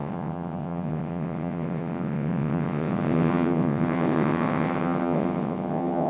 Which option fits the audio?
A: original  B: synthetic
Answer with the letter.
B